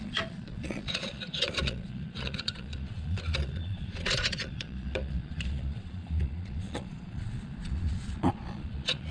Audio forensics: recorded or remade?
remade